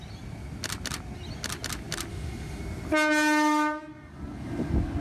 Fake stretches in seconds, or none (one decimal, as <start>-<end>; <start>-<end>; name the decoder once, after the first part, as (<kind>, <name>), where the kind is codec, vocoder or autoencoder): 2.1-2.6 (autoencoder, DAC-VAE)

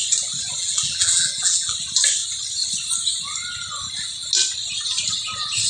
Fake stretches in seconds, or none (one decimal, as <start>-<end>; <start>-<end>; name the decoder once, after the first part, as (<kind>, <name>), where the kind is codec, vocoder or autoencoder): 0.6-1.8 (vocoder, BigVGAN v2)

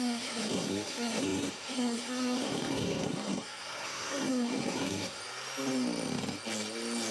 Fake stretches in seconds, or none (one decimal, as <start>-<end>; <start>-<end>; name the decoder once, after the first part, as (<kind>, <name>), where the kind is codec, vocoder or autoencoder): 0.0-5.2 (codec, SNAC)

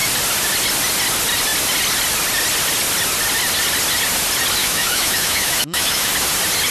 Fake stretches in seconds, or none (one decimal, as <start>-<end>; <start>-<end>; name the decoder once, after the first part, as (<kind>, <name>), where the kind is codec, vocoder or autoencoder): 4.6-6.1 (autoencoder, DAC-VAE)

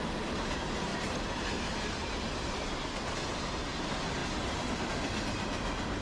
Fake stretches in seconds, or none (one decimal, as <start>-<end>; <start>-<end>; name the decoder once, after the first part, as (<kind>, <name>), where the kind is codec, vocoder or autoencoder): 0.9-3.1 (vocoder, BigVGAN v2); 4.2-4.9

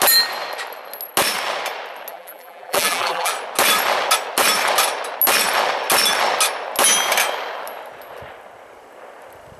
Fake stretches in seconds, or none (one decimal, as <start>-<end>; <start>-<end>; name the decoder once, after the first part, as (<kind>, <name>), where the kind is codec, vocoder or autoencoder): 2.1-3.3 (vocoder, BigVGAN v2)

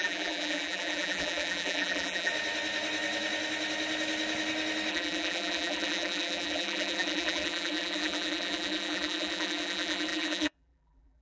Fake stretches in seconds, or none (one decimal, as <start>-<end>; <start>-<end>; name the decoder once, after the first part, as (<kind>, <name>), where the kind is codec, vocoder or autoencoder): 0.0-2.3 (vocoder, BigVGAN v2); 4.9-11.2

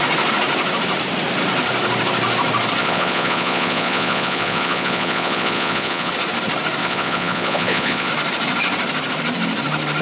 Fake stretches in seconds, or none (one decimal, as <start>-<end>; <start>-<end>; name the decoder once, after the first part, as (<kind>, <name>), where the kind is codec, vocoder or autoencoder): 2.8-6.1 (vocoder, Vocos); 6.8-8.1